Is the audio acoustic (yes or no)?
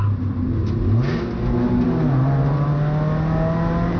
yes